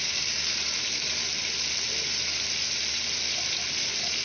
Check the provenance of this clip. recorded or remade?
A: recorded